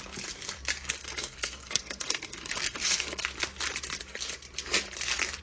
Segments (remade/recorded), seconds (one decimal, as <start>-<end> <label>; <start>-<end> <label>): 0.0-1.0 recorded; 1.0-3.2 remade; 3.2-5.4 recorded

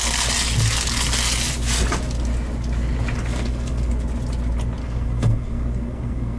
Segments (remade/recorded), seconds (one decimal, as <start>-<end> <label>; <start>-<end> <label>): 0.0-3.3 recorded; 3.3-3.9 remade; 3.9-4.8 recorded; 4.8-6.4 remade

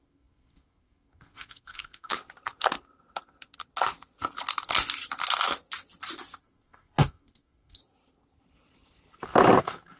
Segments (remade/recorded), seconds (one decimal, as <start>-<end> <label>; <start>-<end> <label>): 0.0-2.1 remade; 2.1-6.4 recorded; 6.4-7.8 remade; 7.8-9.6 recorded; 9.6-10.0 remade

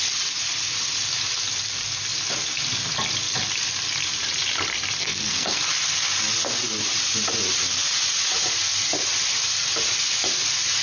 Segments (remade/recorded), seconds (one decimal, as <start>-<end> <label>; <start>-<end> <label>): 0.0-5.0 recorded; 5.0-5.6 remade; 5.6-10.8 recorded